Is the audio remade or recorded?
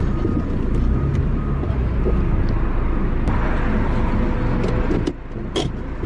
recorded